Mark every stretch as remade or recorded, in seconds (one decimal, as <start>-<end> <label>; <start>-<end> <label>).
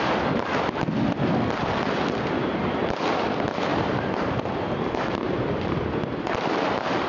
0.0-7.1 recorded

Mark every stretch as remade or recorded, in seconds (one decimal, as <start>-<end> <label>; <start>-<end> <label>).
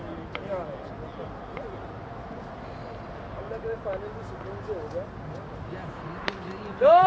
0.0-7.1 recorded